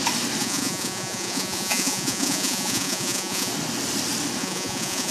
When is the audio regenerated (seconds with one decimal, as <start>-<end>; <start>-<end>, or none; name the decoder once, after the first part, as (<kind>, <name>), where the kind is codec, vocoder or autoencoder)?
0.4-3.5 (vocoder, Vocos); 4.4-5.1